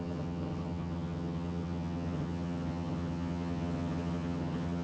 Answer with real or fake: fake